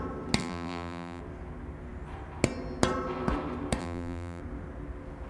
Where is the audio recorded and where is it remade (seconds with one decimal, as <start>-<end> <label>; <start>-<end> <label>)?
0.0-0.4 recorded; 0.4-1.2 remade; 1.2-3.8 recorded; 3.8-4.4 remade; 4.4-5.3 recorded